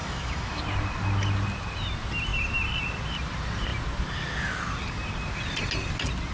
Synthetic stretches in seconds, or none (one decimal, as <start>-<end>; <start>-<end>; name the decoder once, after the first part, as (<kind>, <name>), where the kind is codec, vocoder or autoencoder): 0.0-0.6 (autoencoder, DAC-VAE)